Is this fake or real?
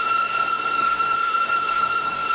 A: fake